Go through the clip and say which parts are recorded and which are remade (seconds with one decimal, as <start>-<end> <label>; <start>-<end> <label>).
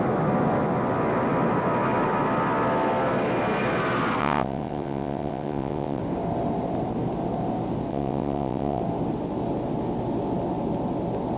0.0-4.2 recorded; 4.2-6.0 remade; 6.0-7.9 recorded; 7.9-8.8 remade; 8.8-11.4 recorded